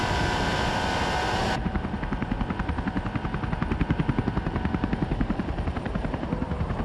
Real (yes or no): no